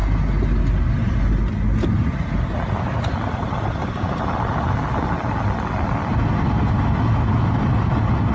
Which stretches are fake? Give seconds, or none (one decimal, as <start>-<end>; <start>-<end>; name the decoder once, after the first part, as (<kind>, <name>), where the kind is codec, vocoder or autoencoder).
none